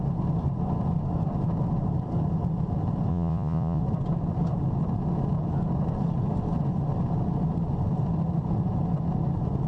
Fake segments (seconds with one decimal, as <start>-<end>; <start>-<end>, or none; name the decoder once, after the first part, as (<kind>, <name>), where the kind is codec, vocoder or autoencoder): 3.1-3.8 (vocoder, Vocos)